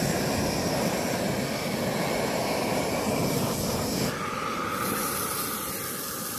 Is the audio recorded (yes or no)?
yes